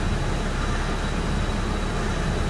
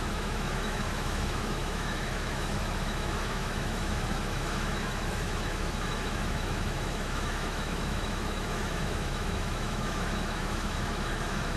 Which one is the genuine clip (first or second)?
first